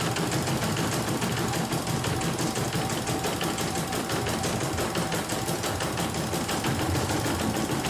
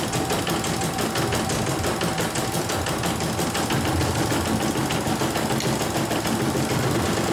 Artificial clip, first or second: first